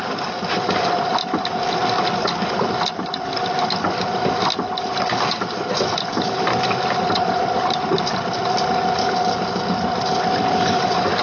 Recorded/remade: recorded